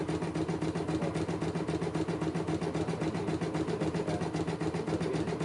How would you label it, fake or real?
real